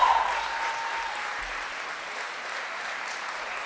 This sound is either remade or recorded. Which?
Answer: remade